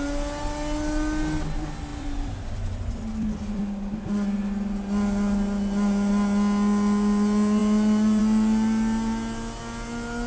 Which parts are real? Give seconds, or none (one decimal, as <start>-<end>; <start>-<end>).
0.0-1.9; 3.6-10.3